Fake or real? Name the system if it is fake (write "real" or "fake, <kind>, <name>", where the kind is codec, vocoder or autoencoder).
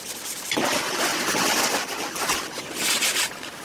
real